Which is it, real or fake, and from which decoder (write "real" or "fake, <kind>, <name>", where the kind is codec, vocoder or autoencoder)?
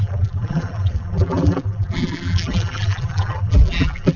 fake, vocoder, BigVGAN v2